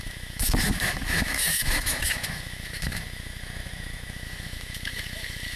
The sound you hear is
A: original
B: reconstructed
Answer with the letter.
B